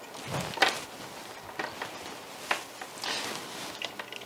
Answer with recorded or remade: recorded